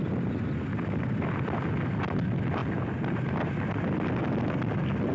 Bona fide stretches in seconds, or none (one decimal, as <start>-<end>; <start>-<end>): 0.0-5.1